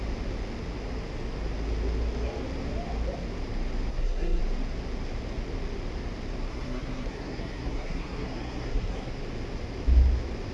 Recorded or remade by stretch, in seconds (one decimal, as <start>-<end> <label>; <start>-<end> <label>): 0.0-3.9 recorded; 3.9-4.4 remade; 4.4-6.5 recorded; 6.5-9.1 remade; 9.1-10.5 recorded